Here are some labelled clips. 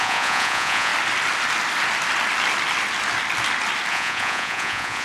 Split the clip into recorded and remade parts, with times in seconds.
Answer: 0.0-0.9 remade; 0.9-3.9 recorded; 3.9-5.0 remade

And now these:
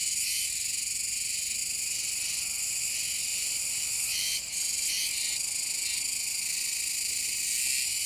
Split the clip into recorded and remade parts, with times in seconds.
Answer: 0.0-3.3 recorded; 3.3-5.4 remade; 5.4-8.1 recorded

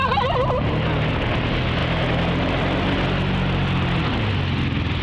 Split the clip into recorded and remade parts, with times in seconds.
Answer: 0.0-5.0 recorded

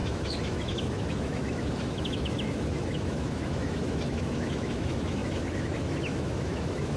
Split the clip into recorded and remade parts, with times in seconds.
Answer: 0.0-7.0 remade

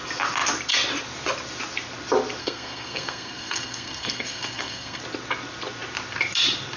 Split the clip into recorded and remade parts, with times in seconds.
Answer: 0.0-2.4 recorded; 2.4-5.0 remade; 5.0-6.8 recorded

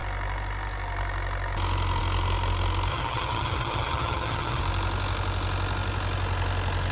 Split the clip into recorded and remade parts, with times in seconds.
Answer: 0.0-2.9 recorded; 2.9-4.6 remade; 4.6-6.9 recorded

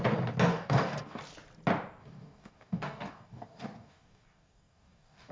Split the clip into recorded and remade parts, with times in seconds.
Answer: 0.0-0.5 recorded; 0.5-1.2 remade; 1.2-2.0 recorded; 2.0-5.3 remade